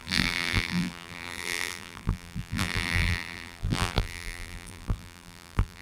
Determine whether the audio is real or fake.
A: fake